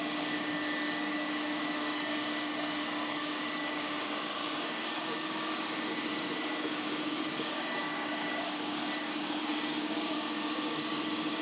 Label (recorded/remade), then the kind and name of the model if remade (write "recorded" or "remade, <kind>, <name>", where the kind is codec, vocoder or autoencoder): remade, codec, DAC